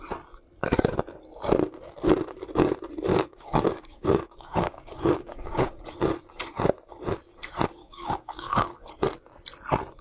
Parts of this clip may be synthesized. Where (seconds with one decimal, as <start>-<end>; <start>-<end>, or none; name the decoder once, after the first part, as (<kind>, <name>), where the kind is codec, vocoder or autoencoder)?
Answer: 3.1-5.8 (codec, DAC); 7.8-8.9